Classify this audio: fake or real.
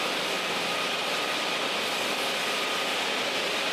real